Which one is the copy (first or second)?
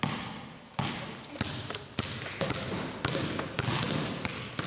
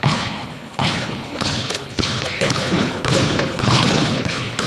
second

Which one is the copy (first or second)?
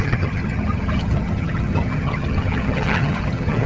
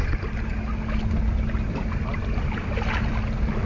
first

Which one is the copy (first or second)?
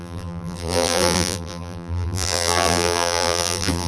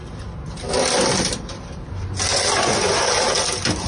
first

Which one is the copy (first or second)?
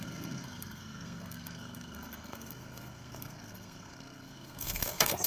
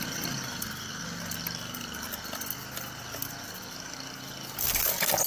first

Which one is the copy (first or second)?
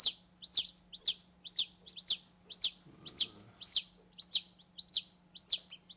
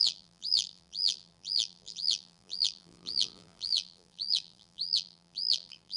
second